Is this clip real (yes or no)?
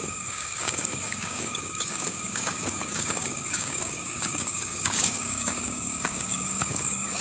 no